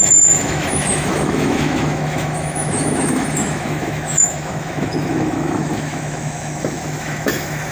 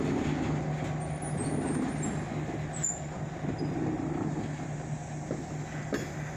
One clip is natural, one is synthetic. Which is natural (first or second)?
second